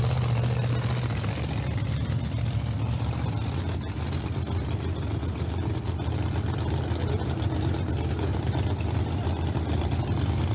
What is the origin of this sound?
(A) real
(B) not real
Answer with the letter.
A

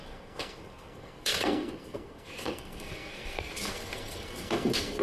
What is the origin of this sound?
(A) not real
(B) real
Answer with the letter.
A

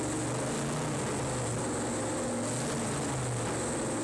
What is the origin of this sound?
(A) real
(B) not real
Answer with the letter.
A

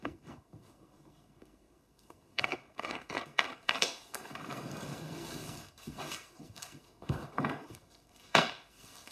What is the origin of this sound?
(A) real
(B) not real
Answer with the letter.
B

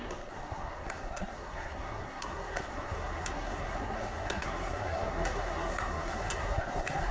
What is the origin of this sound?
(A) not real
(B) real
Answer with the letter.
A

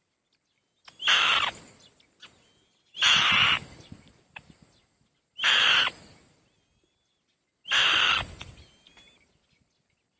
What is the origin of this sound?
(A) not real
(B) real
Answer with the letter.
B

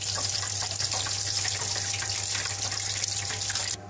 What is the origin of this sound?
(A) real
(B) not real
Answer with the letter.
A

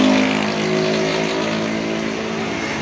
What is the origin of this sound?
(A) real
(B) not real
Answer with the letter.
A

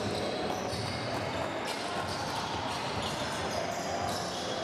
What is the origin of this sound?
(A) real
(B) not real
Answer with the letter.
A